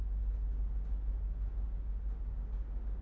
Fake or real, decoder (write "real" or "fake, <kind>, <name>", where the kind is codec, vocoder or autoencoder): real